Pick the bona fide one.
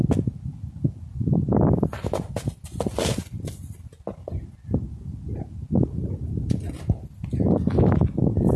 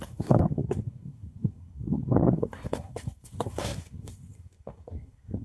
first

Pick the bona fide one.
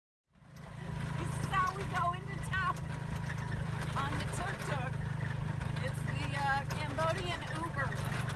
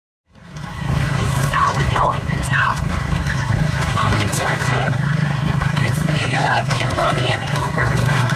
first